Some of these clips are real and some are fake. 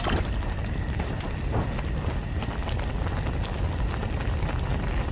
real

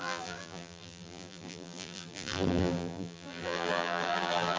fake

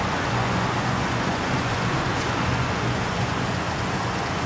fake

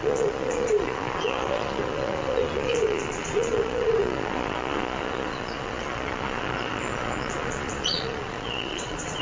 fake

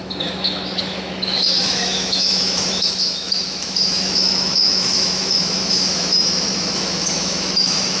fake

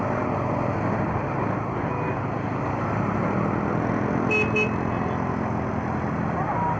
real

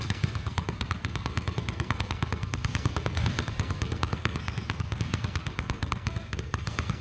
fake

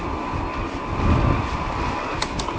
real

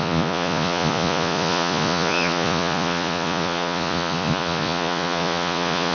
fake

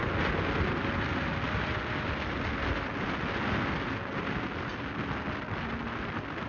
real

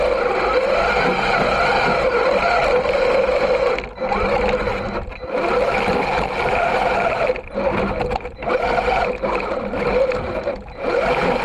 real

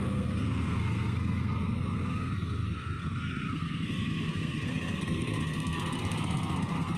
fake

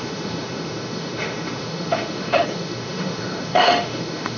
fake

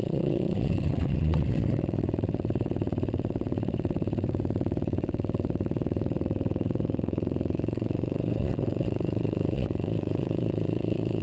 fake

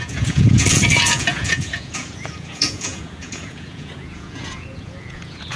fake